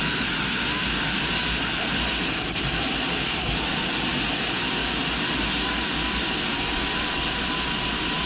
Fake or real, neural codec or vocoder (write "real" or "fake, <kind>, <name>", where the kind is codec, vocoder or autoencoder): real